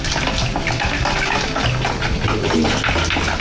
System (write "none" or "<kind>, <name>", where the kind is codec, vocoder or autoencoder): none